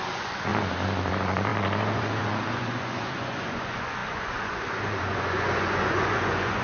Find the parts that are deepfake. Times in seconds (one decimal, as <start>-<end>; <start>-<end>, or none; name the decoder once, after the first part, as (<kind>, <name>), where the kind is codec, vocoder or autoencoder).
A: 0.0-0.5 (vocoder, Vocos); 1.1-6.6